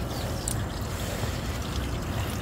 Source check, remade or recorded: recorded